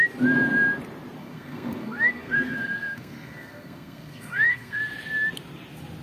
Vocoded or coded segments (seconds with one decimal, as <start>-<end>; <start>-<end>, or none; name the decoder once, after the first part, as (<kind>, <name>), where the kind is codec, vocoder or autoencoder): 1.2-4.8 (codec, SNAC)